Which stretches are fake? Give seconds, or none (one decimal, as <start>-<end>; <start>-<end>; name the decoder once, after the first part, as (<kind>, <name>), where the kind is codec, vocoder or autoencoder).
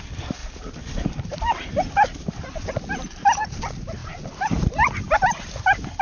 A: 0.4-2.7 (vocoder, BigVGAN v2)